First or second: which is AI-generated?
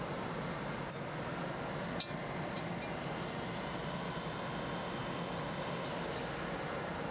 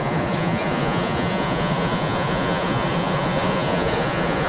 second